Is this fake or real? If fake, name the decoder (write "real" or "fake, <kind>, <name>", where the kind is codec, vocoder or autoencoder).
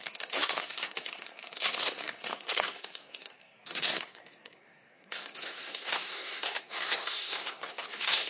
fake, codec, SNAC